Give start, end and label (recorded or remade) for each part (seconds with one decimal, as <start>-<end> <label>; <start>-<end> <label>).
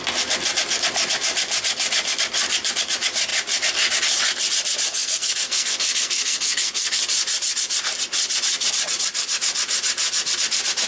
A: 0.0-4.9 recorded; 4.9-7.0 remade; 7.0-10.9 recorded